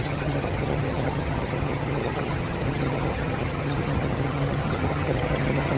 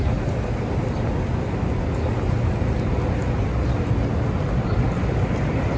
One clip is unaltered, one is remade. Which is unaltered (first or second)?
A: second